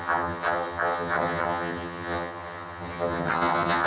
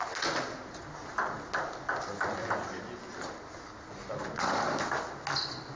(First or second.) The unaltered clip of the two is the second